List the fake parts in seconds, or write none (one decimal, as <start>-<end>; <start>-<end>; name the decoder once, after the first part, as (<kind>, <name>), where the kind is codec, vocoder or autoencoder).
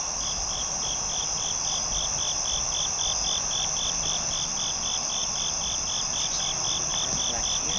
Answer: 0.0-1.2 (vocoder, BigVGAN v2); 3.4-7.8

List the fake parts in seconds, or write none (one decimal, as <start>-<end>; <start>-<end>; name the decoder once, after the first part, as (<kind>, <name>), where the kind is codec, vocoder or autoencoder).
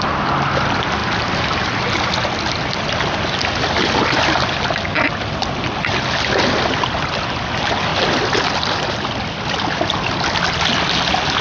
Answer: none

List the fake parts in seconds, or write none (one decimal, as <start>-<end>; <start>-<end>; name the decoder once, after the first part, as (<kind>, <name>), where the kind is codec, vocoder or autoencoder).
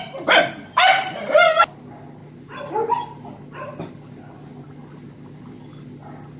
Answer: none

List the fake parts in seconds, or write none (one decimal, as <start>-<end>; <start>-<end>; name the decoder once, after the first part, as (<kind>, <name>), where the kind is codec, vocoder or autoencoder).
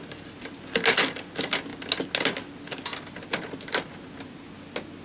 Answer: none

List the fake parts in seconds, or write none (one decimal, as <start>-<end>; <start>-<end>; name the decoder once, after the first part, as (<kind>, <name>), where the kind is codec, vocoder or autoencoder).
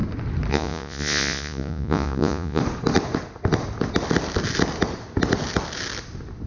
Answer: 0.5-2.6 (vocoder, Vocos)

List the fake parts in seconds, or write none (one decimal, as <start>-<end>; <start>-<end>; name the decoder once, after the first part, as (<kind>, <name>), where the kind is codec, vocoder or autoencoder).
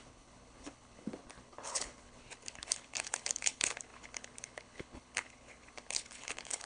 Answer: 0.0-6.7 (codec, HILCodec)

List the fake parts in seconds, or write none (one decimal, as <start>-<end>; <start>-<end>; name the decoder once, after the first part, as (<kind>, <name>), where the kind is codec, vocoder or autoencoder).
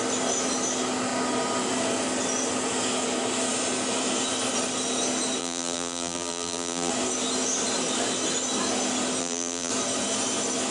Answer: 5.4-6.9 (vocoder, BigVGAN v2); 9.2-9.7